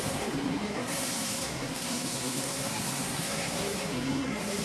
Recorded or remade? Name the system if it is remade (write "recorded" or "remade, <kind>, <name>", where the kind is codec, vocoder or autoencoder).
remade, codec, SNAC